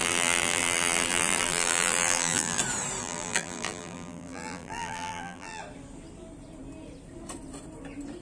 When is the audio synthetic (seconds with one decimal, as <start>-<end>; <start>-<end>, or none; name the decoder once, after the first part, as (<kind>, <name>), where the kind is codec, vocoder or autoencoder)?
0.0-2.6 (vocoder, BigVGAN v2); 3.0-5.6